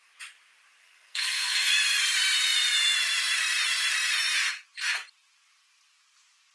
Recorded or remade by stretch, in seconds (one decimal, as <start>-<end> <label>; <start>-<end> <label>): 0.0-0.8 recorded; 0.8-1.7 remade; 1.7-6.5 recorded